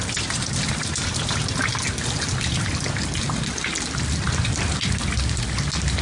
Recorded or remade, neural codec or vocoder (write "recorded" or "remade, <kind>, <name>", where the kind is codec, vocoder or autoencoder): recorded